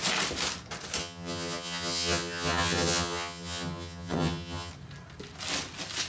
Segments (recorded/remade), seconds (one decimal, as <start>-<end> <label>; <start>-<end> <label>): 0.0-1.0 recorded; 1.0-4.7 remade; 4.7-6.1 recorded